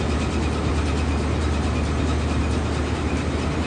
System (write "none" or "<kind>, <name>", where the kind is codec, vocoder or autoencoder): none